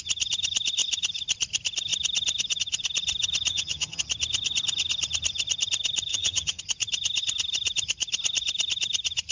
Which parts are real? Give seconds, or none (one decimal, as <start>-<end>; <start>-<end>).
0.0-3.5; 4.0-6.1; 6.6-9.3